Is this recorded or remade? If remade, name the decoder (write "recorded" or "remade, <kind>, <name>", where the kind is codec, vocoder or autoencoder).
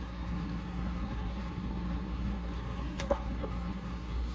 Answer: remade, codec, SNAC